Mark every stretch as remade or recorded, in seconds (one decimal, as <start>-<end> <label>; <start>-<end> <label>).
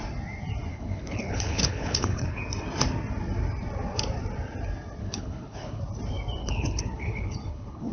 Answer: 0.0-0.7 recorded; 0.7-2.4 remade; 2.4-5.0 recorded; 5.0-5.8 remade; 5.8-6.4 recorded; 6.4-7.9 remade